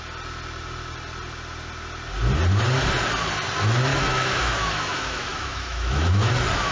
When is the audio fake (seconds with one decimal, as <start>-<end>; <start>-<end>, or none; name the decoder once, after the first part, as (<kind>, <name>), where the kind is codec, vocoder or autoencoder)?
3.9-6.3 (autoencoder, DAC-VAE)